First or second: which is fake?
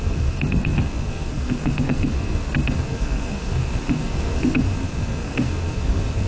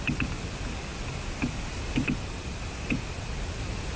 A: first